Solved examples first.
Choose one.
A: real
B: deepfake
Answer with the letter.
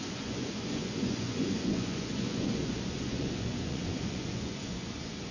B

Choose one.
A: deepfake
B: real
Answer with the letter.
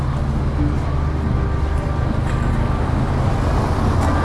B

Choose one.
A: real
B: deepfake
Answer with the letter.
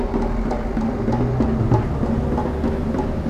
A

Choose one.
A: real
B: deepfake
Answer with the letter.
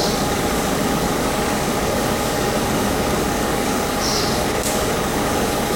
B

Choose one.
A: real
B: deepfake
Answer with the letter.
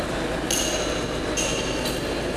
A